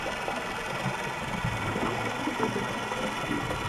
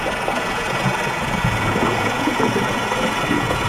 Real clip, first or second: first